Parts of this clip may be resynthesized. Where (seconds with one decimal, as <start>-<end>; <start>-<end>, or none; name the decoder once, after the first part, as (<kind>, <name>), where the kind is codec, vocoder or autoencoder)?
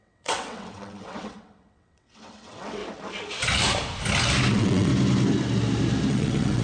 0.0-2.8 (vocoder, WaveNeXt); 4.5-4.9; 6.1-6.6